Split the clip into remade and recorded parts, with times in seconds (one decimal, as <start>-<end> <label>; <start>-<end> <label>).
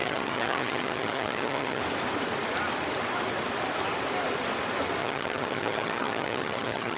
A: 0.0-1.8 remade; 1.8-5.0 recorded; 5.0-7.0 remade